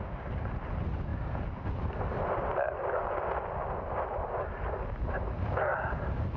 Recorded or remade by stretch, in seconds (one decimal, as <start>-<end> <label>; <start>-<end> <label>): 0.0-6.4 recorded